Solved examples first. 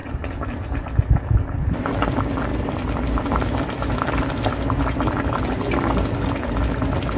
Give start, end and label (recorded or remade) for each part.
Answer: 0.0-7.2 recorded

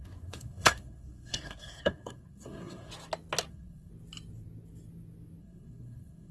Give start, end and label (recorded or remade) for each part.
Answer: 0.0-2.9 remade; 2.9-3.5 recorded; 3.5-3.9 remade; 3.9-5.4 recorded; 5.4-6.3 remade

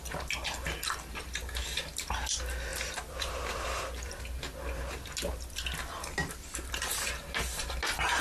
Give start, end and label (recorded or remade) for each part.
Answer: 0.0-2.7 recorded; 2.7-4.2 remade; 4.2-6.2 recorded; 6.2-6.9 remade; 6.9-8.2 recorded